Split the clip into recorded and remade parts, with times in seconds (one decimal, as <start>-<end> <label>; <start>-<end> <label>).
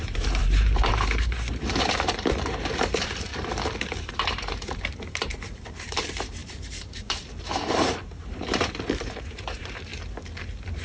0.0-3.3 remade; 3.3-4.1 recorded; 4.1-9.9 remade; 9.9-10.4 recorded; 10.4-10.8 remade